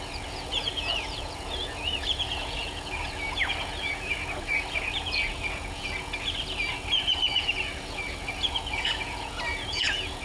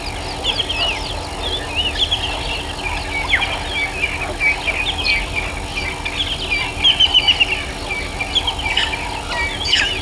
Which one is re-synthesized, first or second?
first